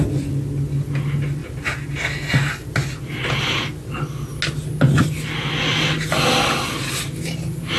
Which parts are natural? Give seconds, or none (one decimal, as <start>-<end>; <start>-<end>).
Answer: 0.0-7.8